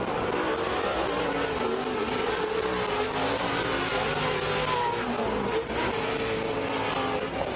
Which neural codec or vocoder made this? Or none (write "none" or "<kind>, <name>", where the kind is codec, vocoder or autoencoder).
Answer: none